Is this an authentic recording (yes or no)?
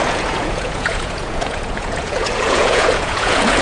no